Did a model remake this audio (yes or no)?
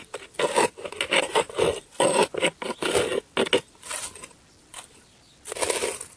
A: no